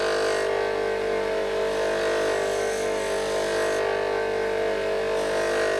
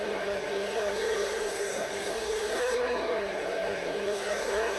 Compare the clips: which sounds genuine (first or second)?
first